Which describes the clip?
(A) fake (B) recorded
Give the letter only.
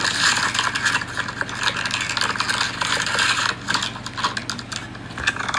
B